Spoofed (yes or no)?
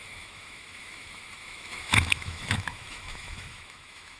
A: yes